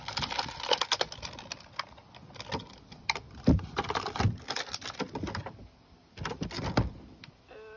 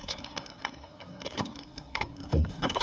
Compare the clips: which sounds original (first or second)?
first